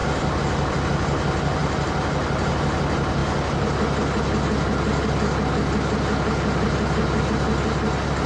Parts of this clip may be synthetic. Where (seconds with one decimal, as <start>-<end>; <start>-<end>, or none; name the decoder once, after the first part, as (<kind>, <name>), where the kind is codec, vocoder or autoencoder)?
0.0-0.8 (vocoder, BigVGAN v2); 1.6-2.5